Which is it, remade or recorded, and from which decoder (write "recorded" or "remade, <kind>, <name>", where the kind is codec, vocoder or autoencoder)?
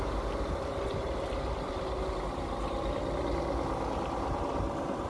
recorded